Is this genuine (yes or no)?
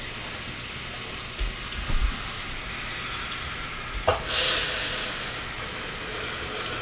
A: yes